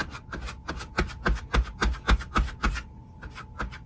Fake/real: real